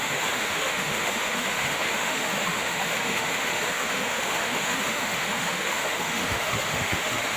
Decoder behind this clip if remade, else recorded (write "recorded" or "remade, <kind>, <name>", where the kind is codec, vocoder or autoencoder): remade, autoencoder, DAC-VAE